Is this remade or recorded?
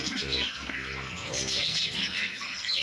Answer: remade